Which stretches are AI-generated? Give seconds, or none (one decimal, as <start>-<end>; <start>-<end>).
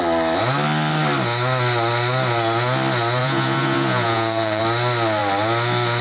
3.2-4.6